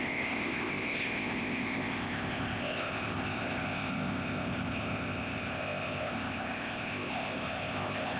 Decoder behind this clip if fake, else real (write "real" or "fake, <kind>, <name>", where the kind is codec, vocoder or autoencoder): fake, codec, ZipCodec